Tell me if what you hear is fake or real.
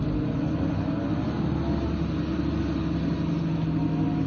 real